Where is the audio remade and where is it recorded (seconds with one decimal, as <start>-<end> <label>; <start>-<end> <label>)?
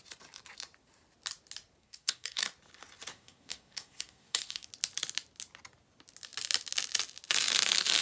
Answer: 0.0-1.8 recorded; 1.8-2.4 remade; 2.4-3.1 recorded; 3.1-4.7 remade; 4.7-8.0 recorded